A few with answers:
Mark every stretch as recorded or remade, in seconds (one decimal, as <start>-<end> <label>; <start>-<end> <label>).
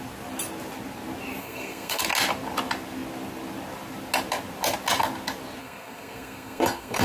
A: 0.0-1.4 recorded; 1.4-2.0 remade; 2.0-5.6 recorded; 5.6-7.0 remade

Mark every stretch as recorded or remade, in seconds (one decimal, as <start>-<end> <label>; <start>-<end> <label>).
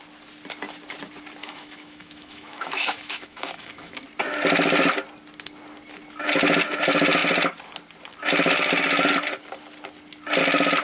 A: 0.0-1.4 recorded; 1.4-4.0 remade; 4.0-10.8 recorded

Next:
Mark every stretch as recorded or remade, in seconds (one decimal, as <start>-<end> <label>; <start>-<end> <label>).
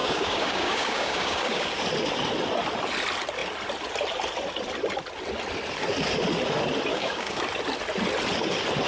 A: 0.0-1.8 remade; 1.8-6.9 recorded; 6.9-7.4 remade; 7.4-8.9 recorded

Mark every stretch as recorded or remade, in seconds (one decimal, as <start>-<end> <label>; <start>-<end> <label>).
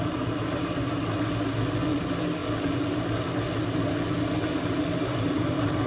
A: 0.0-5.9 recorded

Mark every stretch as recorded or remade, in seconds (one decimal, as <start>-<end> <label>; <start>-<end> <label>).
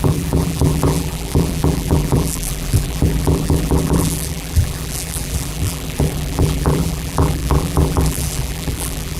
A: 0.0-9.2 remade